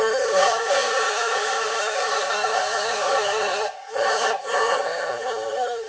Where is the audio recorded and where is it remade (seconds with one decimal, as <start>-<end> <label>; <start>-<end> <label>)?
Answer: 0.0-5.9 remade